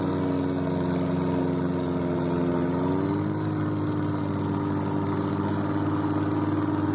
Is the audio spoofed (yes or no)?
no